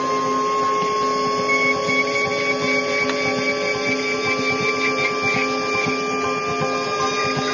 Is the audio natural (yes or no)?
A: yes